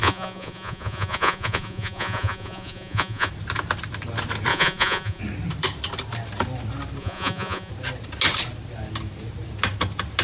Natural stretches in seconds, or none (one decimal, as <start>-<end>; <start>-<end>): 3.3-4.5; 5.2-7.0; 7.7-10.2